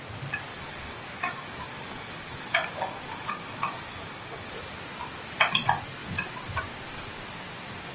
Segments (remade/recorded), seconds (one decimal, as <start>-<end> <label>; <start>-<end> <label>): 0.0-0.5 recorded; 0.5-4.5 remade; 4.5-7.9 recorded